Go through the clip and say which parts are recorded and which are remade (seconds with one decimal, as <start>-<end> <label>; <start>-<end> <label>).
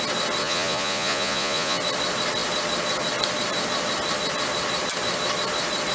0.0-0.4 recorded; 0.4-1.8 remade; 1.8-5.9 recorded